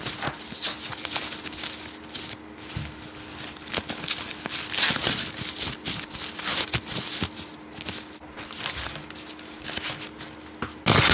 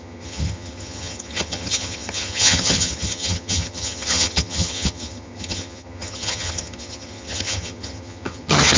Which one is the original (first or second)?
first